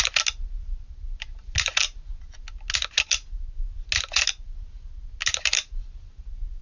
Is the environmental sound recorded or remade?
recorded